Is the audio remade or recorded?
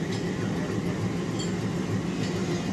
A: recorded